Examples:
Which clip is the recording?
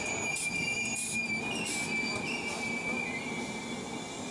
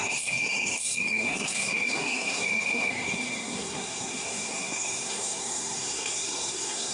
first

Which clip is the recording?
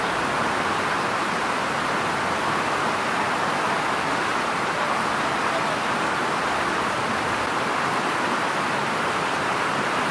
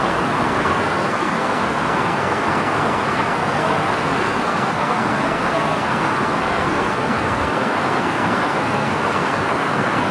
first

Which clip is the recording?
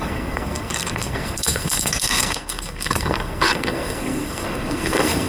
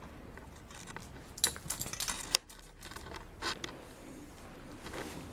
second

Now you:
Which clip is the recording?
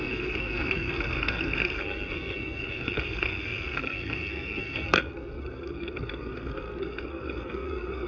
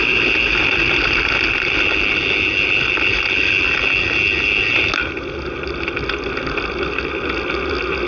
second